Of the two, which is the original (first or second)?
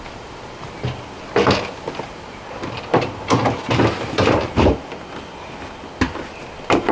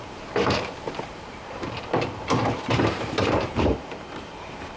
first